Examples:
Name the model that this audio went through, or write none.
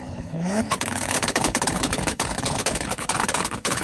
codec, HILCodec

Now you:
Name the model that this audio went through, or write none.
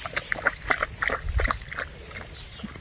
none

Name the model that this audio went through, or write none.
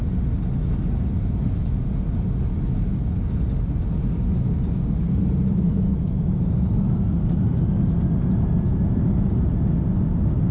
none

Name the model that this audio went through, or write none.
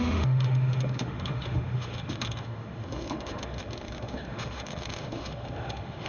autoencoder, DAC-VAE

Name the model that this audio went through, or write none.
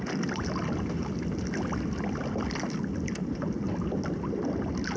none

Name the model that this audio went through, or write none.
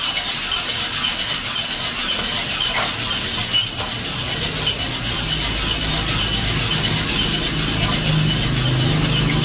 none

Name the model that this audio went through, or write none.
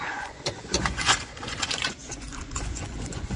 vocoder, Vocos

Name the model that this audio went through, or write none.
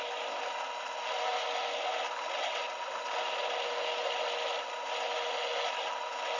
none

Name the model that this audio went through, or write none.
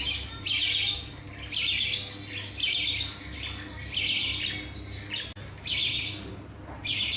none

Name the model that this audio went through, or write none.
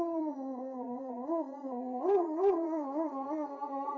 vocoder, Vocos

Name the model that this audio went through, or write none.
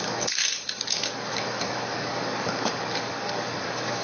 codec, DAC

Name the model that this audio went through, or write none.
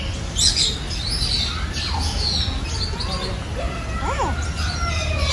none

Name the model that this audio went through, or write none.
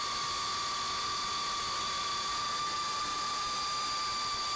none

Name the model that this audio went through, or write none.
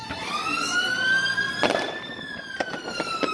none